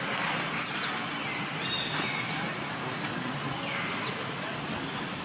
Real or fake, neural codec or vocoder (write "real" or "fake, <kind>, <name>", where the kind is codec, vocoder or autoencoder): real